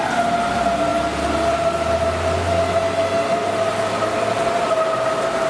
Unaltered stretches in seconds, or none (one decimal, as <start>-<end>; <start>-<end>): 0.0-5.5